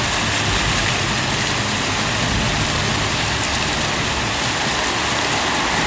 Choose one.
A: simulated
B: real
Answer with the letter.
B